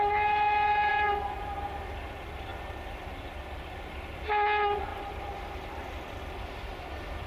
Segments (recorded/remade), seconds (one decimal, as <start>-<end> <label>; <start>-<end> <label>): 0.0-7.3 recorded